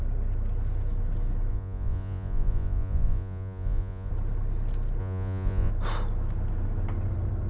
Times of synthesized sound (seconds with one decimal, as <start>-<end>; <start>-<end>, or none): 1.5-4.1; 5.0-5.7